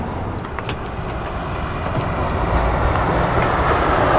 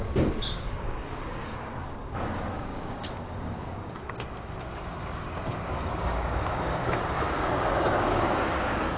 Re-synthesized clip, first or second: second